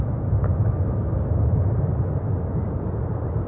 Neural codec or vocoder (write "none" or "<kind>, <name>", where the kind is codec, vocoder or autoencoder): none